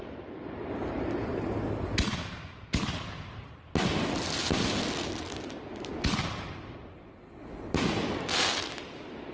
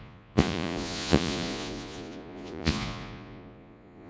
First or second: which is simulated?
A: second